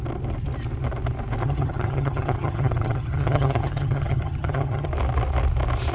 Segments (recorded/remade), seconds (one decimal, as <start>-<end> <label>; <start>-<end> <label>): 0.0-1.4 recorded; 1.4-4.9 remade; 4.9-5.9 recorded